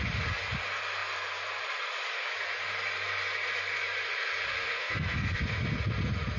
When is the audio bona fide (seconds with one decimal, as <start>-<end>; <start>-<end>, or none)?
0.0-4.5; 5.4-6.4